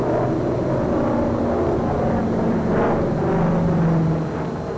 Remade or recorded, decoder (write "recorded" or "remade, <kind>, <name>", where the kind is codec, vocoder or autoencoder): recorded